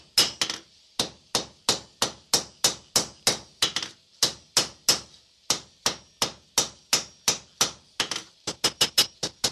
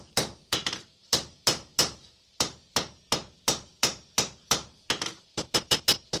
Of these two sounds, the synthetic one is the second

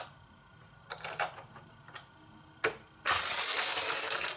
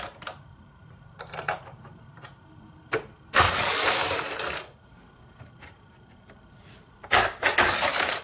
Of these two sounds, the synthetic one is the second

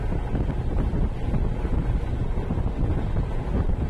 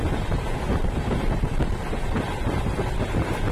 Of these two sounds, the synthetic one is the second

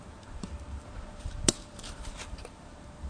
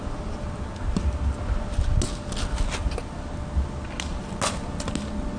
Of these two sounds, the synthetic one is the first